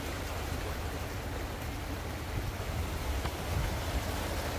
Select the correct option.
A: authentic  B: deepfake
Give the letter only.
A